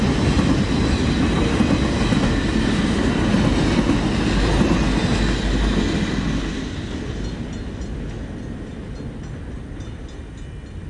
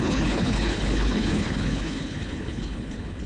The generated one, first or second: second